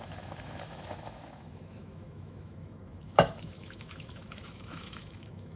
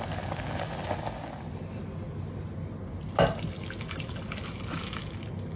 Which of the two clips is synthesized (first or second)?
first